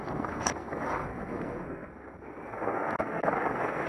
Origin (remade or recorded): remade